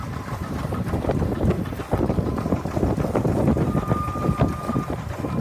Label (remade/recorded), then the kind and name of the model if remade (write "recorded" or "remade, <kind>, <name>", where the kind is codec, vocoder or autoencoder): recorded